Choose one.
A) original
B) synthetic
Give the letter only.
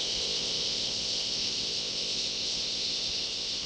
B